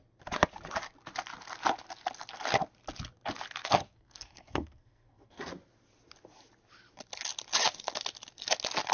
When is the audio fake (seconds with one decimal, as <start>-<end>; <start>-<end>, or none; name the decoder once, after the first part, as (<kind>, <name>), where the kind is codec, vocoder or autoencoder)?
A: 3.6-5.5 (codec, SNAC)